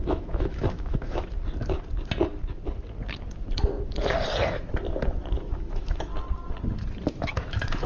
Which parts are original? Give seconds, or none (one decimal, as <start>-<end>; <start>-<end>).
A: 1.4-5.3; 6.1-7.1